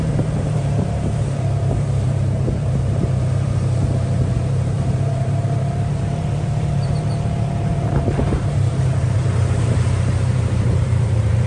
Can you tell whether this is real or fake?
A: fake